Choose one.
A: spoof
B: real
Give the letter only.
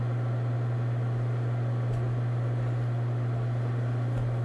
B